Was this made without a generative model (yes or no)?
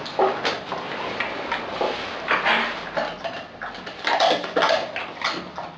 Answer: yes